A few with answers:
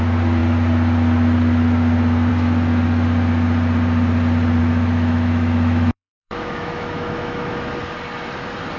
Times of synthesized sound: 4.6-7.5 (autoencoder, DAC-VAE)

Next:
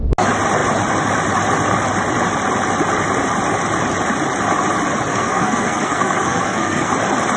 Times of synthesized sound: 5.1-6.9 (codec, SNAC)

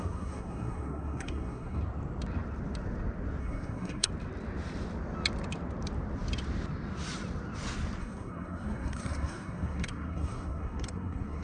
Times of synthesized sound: 0.0-1.8 (codec, SNAC); 3.4-4.1; 8.0-11.4

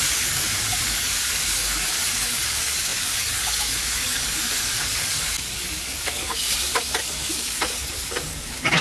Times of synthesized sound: 0.0-8.8 (codec, DAC)